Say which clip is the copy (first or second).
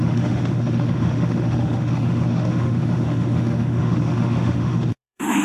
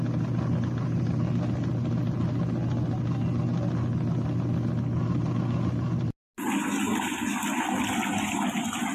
first